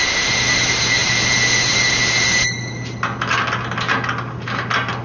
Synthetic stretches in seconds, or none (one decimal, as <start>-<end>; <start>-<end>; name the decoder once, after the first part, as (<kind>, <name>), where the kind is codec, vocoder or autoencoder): none